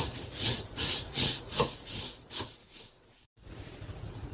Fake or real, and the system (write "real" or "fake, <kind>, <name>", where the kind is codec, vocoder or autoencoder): fake, vocoder, Vocos